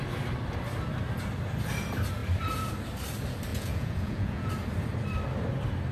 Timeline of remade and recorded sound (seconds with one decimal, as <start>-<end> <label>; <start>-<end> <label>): 0.0-3.5 recorded; 3.5-4.5 remade; 4.5-5.9 recorded